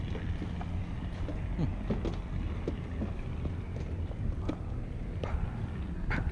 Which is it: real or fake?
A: real